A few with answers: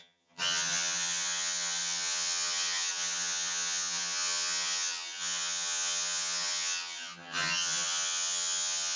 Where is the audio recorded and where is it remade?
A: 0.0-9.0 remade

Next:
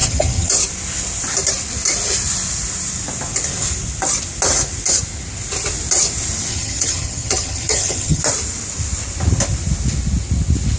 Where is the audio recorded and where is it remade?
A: 0.0-0.5 remade; 0.5-6.5 recorded; 6.5-8.2 remade; 8.2-10.8 recorded